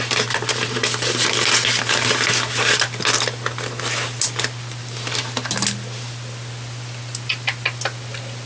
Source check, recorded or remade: recorded